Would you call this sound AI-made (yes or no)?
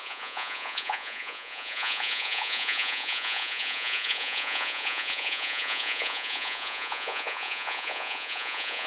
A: yes